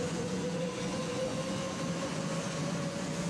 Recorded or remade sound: remade